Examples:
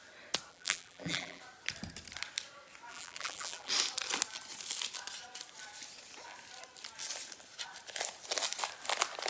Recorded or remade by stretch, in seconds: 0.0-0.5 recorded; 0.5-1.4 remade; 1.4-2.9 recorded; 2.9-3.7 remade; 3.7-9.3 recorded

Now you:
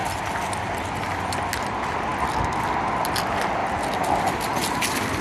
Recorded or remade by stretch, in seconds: 0.0-3.6 recorded; 3.6-5.2 remade

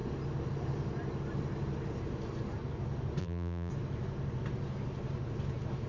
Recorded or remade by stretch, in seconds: 0.0-3.2 recorded; 3.2-3.7 remade; 3.7-5.9 recorded

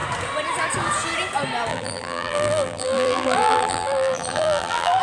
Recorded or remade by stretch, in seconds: 0.0-1.7 recorded; 1.7-5.0 remade

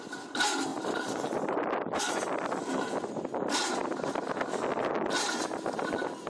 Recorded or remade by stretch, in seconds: 0.0-0.7 recorded; 0.7-2.0 remade; 2.0-6.3 recorded

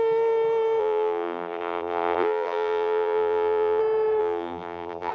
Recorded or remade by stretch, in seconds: 0.0-0.8 recorded; 0.8-3.8 remade; 3.8-4.2 recorded; 4.2-5.1 remade